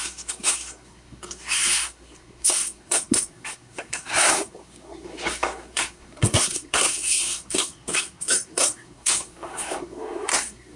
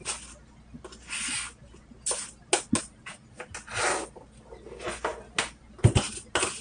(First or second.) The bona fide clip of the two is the second